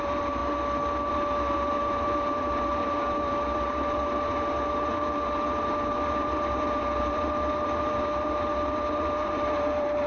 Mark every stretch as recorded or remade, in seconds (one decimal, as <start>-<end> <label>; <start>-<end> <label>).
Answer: 0.0-0.4 remade; 0.4-1.1 recorded; 1.1-10.1 remade